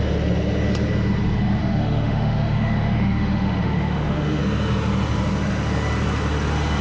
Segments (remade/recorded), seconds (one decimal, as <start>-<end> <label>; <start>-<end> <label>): 0.0-1.6 recorded; 1.6-4.4 remade; 4.4-6.8 recorded